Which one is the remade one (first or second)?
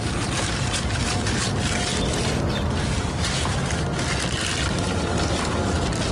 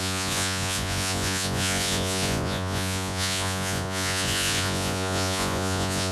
second